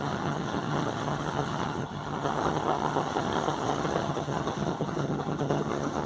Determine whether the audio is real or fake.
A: fake